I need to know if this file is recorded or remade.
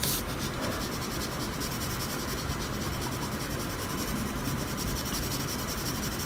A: recorded